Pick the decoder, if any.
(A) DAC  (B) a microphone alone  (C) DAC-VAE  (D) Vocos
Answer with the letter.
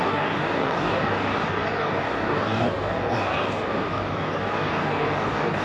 A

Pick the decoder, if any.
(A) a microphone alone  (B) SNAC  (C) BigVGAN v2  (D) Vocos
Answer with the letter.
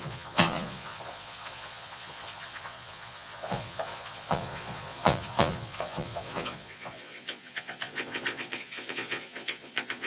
D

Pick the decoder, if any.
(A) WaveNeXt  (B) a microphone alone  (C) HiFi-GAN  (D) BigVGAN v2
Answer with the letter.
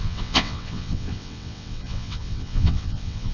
A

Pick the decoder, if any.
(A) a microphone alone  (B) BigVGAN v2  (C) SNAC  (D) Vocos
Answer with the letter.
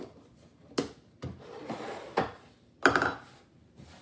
A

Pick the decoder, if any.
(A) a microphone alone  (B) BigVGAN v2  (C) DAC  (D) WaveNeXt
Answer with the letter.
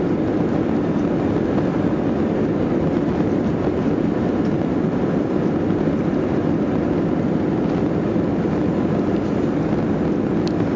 A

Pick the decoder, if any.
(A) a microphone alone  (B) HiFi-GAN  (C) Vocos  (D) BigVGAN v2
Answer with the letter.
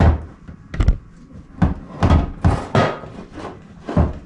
A